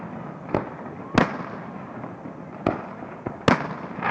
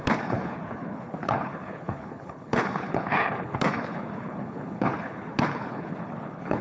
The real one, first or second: first